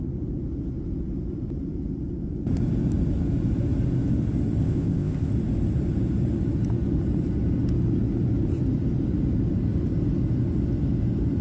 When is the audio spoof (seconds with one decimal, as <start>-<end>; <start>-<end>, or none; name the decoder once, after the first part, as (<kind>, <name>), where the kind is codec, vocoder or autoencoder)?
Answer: 4.6-5.3 (codec, ZipCodec)